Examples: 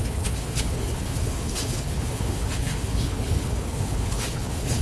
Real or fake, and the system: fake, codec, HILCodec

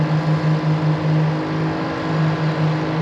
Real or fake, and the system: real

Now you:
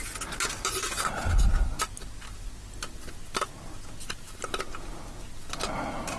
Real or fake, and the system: real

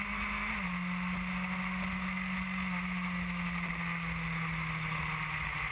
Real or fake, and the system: real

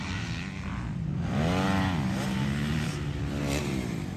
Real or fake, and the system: real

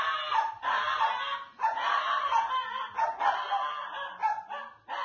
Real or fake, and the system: real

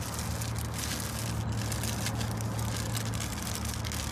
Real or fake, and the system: real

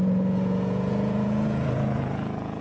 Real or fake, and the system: fake, vocoder, Vocos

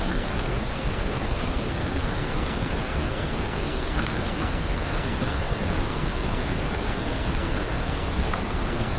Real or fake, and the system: fake, codec, SNAC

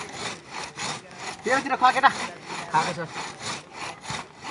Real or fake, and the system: real